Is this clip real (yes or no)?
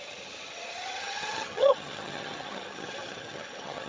no